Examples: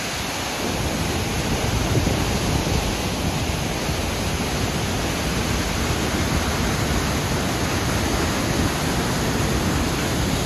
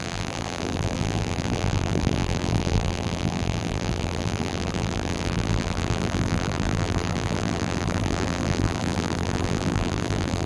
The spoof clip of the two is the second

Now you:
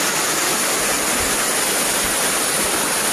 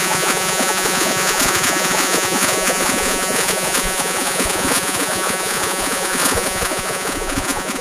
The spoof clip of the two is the second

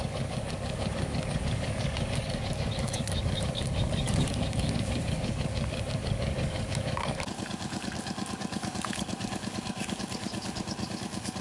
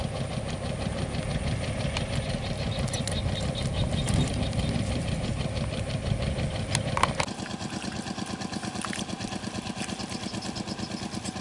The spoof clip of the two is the first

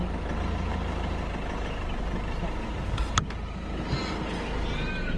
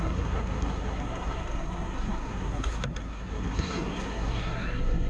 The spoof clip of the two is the second